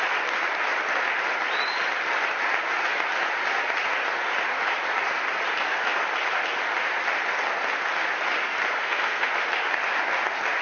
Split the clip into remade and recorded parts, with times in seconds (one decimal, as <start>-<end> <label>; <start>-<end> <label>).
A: 0.0-8.8 recorded; 8.8-9.3 remade; 9.3-10.6 recorded